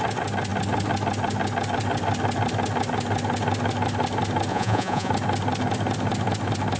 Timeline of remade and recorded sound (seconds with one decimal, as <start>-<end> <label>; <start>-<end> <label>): 0.0-4.5 recorded; 4.5-5.1 remade; 5.1-6.8 recorded